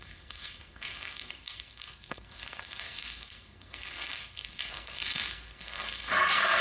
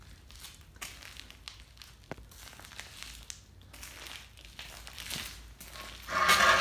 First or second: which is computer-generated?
first